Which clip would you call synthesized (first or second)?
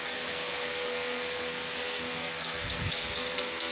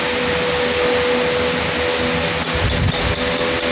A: first